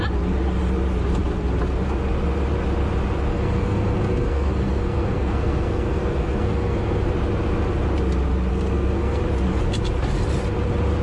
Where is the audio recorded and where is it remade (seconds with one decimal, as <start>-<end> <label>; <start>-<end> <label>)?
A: 0.0-3.3 recorded; 3.3-7.1 remade; 7.1-8.5 recorded; 8.5-9.2 remade; 9.2-11.0 recorded